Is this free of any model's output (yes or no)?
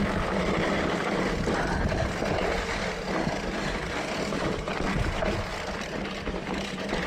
yes